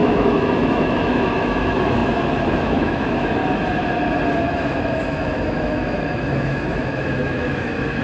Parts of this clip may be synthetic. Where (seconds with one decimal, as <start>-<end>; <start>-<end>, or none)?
0.0-3.4; 4.4-8.0